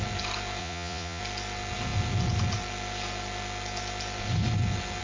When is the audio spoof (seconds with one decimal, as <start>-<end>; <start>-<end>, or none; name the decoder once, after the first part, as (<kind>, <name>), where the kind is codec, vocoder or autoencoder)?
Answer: 0.6-1.2 (vocoder, Vocos)